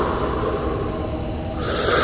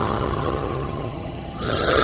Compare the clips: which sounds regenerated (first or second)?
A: second